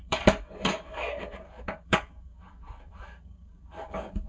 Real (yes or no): no